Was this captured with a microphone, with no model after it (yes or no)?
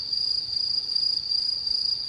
no